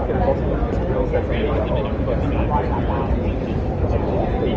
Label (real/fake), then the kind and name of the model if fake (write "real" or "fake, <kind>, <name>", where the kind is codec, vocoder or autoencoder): real